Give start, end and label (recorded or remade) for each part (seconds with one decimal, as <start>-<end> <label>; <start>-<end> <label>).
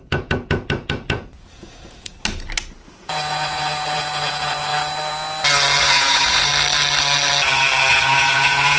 0.0-2.1 remade; 2.1-3.0 recorded; 3.0-4.7 remade; 4.7-5.8 recorded; 5.8-6.5 remade; 6.5-7.9 recorded; 7.9-8.8 remade